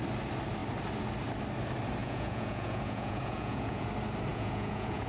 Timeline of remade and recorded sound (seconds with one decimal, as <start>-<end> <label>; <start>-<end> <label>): 0.0-2.0 recorded; 2.0-3.9 remade; 3.9-4.3 recorded; 4.3-5.1 remade